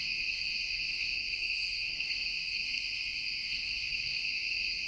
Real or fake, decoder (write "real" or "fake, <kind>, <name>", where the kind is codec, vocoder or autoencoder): fake, codec, SNAC